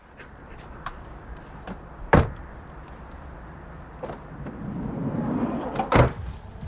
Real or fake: fake